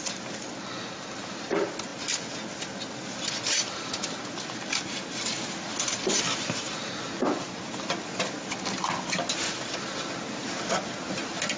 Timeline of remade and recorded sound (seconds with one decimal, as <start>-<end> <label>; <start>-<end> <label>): 0.0-11.6 recorded